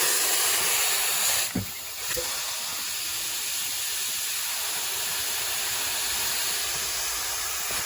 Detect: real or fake real